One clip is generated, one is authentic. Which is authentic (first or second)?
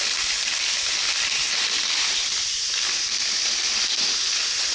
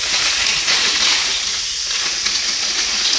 first